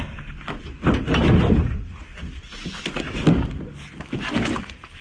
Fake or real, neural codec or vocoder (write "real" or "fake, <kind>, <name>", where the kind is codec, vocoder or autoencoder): real